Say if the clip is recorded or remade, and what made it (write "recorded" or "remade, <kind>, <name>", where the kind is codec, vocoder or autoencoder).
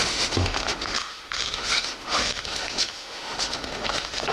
remade, autoencoder, DAC-VAE